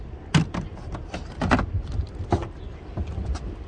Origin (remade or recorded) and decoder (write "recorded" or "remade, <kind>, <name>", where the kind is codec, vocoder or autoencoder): recorded